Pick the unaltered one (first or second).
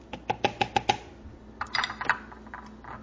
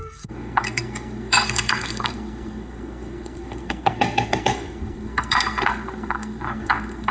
first